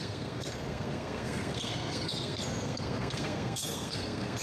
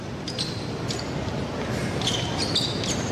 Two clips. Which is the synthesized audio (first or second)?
first